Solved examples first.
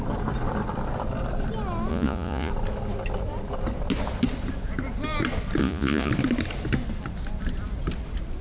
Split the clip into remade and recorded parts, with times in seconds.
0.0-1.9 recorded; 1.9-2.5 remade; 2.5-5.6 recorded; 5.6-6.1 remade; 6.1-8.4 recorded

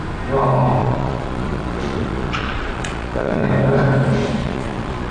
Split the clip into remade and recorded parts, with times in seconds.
0.0-0.8 recorded; 0.8-3.5 remade; 3.5-4.4 recorded; 4.4-5.1 remade

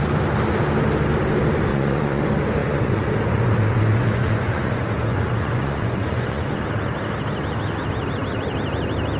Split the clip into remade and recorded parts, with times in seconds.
0.0-1.7 recorded; 1.7-2.2 remade; 2.2-2.6 recorded; 2.6-6.5 remade; 6.5-9.2 recorded

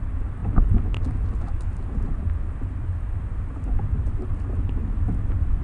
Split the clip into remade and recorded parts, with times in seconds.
0.0-5.6 recorded

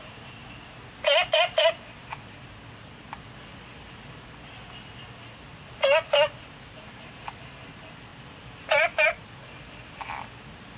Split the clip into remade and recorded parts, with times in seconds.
0.0-10.8 recorded

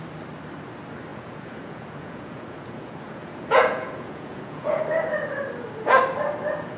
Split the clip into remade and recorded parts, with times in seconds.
0.0-1.1 recorded; 1.1-4.8 remade; 4.8-6.8 recorded